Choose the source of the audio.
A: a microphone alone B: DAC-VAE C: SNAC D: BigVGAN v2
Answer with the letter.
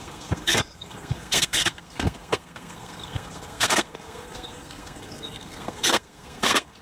C